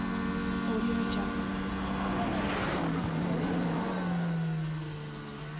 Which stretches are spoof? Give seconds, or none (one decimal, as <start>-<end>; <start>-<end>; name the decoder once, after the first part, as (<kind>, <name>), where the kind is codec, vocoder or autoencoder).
0.4-1.7 (vocoder, BigVGAN v2)